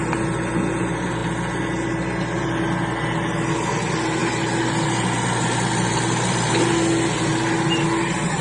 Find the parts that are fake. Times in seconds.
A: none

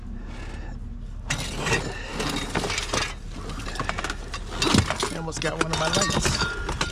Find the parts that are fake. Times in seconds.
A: none

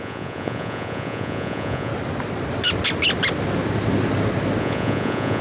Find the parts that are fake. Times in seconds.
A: 0.0-1.9 (vocoder, Vocos); 4.6-5.4

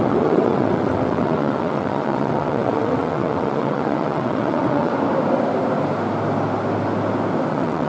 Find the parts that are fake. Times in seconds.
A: 0.0-4.9 (vocoder, WaveNeXt); 7.5-7.9